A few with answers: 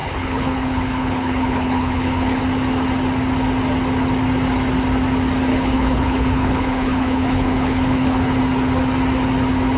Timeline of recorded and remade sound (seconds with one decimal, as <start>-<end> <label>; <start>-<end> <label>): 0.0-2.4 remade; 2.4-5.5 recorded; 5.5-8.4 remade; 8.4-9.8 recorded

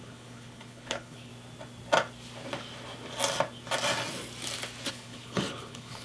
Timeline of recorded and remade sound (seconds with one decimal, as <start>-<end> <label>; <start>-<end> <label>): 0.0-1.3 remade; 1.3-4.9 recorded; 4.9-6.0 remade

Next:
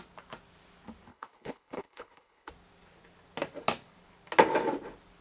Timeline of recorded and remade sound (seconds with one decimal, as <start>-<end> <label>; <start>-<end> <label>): 0.0-1.1 recorded; 1.1-2.5 remade; 2.5-5.2 recorded

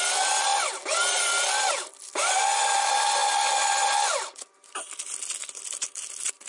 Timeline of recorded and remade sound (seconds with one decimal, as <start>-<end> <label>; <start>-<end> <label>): 0.0-6.5 recorded

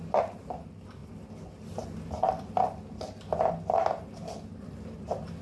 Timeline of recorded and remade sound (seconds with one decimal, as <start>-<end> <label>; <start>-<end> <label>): 0.0-5.4 recorded